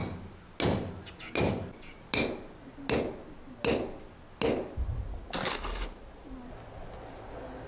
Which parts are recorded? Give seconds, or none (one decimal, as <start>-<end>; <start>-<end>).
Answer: 0.0-7.7